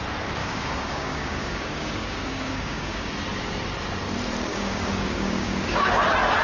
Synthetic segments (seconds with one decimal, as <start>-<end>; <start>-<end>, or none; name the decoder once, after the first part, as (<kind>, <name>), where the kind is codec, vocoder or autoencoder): 0.4-3.1 (codec, DAC); 4.5-5.9